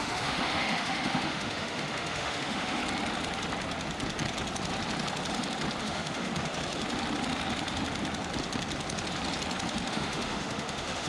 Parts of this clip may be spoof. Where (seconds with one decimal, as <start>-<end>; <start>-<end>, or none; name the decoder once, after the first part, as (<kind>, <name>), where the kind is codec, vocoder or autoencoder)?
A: 0.0-2.8 (autoencoder, DAC-VAE); 5.8-6.3; 9.9-11.1